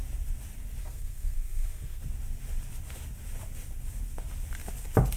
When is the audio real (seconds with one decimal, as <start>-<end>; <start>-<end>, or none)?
0.0-0.8; 2.0-5.2